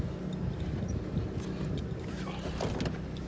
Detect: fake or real real